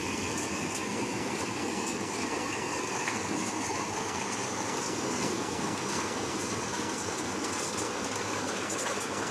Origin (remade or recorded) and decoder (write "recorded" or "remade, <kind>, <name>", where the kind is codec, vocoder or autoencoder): remade, codec, SNAC